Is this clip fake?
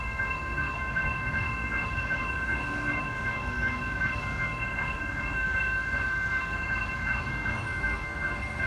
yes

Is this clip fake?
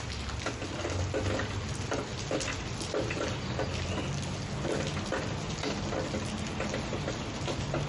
no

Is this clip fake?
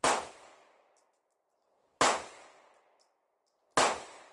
no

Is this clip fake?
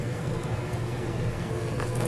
yes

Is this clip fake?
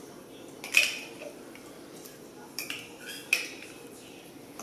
no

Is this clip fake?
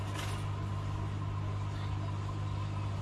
no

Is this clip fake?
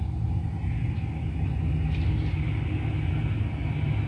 no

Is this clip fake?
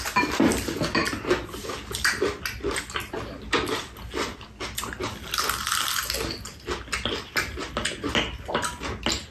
no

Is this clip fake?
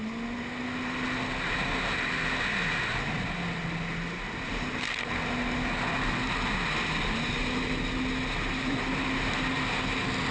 no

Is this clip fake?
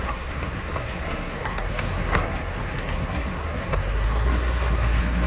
yes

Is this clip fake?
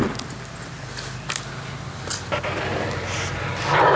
no